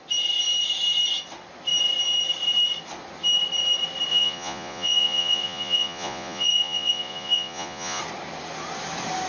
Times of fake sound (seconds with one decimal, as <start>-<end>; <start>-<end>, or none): 4.1-8.0